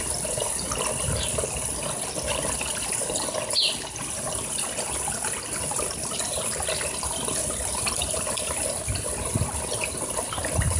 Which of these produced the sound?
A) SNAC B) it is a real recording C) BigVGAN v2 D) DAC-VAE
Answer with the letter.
B